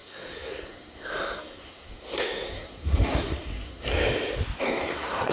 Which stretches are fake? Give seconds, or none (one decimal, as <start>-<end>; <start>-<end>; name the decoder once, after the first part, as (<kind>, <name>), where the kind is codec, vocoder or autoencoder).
0.0-3.9 (codec, SNAC); 4.6-5.3